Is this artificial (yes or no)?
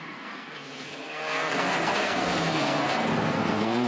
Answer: yes